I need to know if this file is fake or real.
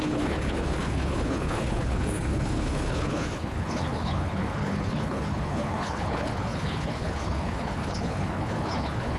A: fake